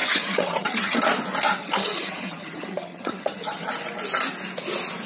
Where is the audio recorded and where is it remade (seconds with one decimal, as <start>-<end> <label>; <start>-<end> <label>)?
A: 0.0-1.0 remade; 1.0-1.6 recorded; 1.6-3.7 remade; 3.7-5.1 recorded